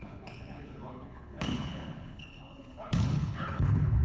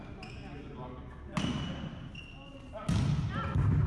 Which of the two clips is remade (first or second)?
first